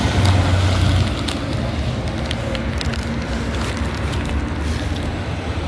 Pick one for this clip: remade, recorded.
recorded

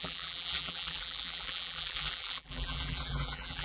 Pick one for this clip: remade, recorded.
remade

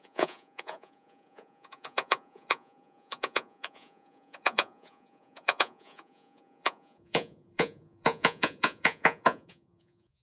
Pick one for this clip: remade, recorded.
remade